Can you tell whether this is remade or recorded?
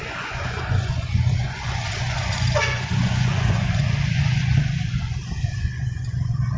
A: remade